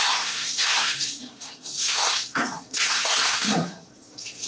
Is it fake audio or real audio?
fake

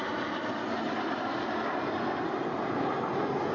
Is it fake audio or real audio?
real